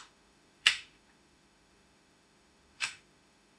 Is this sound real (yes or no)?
no